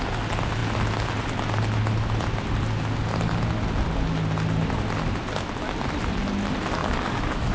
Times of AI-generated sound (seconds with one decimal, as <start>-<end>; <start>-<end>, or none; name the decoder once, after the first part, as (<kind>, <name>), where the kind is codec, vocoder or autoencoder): 6.8-7.5 (codec, DAC)